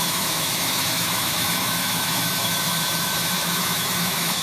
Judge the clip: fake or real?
fake